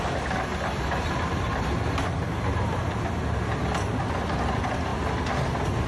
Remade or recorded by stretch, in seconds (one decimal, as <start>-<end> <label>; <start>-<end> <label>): 0.0-5.9 recorded